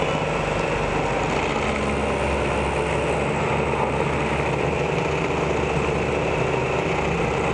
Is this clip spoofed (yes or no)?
no